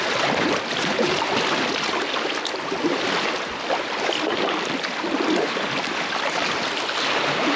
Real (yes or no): yes